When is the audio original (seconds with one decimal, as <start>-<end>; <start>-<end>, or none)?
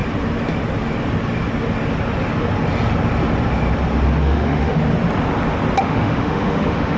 0.0-4.2; 4.7-5.8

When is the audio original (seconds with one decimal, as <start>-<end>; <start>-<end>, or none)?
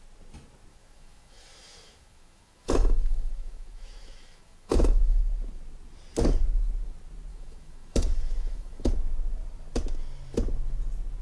0.0-0.7; 5.2-7.3; 8.9-11.2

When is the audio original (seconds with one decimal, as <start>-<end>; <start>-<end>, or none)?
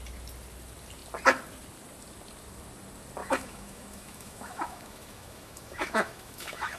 0.0-3.2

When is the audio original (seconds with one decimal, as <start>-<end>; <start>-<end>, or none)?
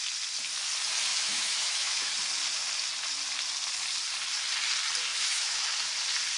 0.0-1.1; 2.1-5.1; 5.7-6.4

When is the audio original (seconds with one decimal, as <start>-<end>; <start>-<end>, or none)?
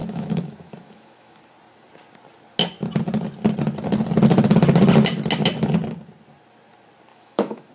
1.4-7.1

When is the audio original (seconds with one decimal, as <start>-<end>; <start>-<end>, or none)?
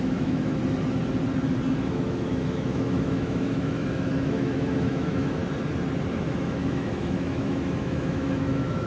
0.6-1.7; 5.4-6.1